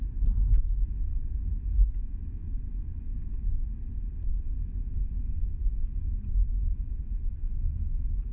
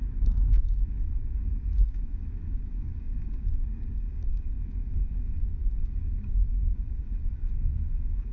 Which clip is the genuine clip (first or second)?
first